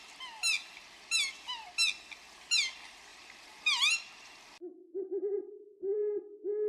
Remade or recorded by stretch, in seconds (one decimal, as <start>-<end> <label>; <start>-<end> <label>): 0.0-3.1 recorded; 3.1-3.8 remade; 3.8-4.8 recorded; 4.8-6.2 remade; 6.2-6.7 recorded